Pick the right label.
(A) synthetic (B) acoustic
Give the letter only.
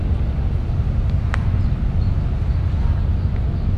B